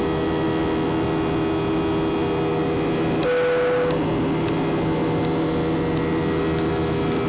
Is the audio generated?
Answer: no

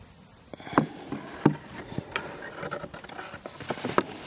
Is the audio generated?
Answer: no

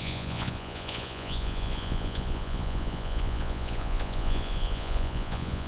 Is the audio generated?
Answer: yes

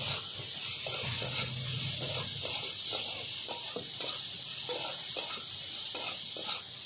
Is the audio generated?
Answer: no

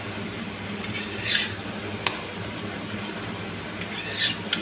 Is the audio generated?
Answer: no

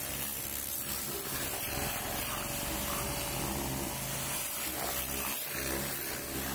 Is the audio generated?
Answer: no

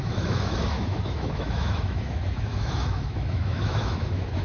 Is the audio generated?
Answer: yes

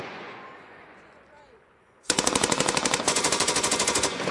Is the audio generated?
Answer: yes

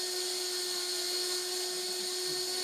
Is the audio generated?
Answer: no